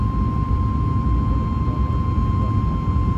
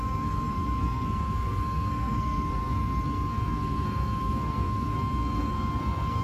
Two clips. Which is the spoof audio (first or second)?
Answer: second